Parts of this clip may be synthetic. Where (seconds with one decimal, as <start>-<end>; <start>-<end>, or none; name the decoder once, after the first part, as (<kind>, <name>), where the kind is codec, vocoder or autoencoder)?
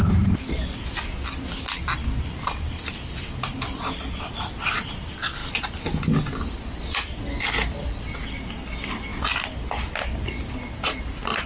none